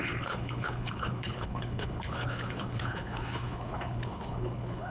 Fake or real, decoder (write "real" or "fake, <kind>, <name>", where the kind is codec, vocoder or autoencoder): fake, codec, HILCodec